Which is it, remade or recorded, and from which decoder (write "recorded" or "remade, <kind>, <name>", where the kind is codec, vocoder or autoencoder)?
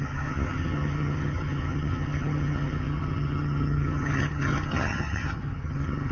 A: remade, vocoder, HiFi-GAN